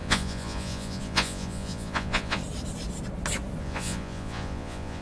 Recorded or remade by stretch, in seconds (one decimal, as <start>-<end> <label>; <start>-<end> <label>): 0.0-2.4 remade; 2.4-3.6 recorded; 3.6-5.0 remade